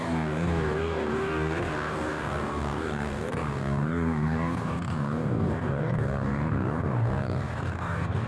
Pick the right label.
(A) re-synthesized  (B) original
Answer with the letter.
A